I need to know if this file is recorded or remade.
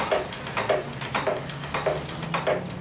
recorded